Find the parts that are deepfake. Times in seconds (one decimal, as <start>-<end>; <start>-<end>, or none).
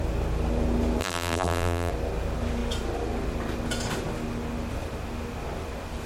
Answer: 1.0-1.9